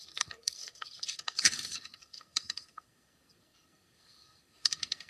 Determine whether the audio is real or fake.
fake